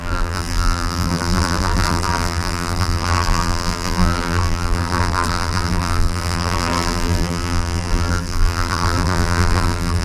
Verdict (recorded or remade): remade